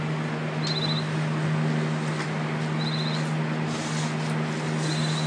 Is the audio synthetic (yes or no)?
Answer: no